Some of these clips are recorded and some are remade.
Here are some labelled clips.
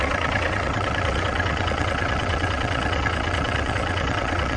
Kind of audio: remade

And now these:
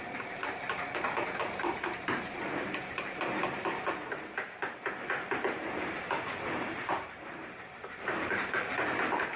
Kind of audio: remade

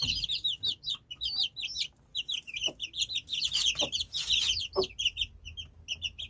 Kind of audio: recorded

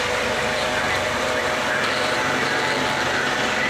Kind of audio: recorded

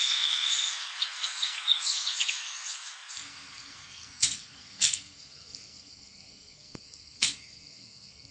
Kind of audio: remade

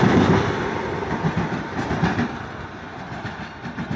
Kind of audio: recorded